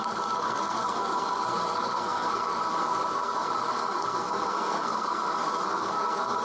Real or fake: fake